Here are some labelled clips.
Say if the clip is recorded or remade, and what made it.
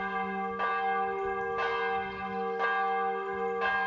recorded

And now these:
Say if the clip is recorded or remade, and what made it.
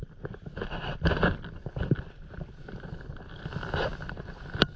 recorded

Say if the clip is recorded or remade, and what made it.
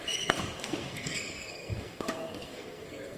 remade, codec, SNAC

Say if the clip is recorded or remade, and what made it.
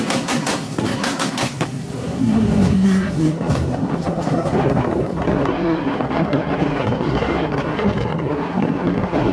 remade, codec, SNAC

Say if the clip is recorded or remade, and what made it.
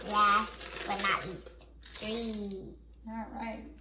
recorded